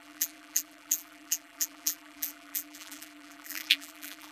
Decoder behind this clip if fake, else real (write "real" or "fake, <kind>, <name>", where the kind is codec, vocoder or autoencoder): fake, vocoder, BigVGAN v2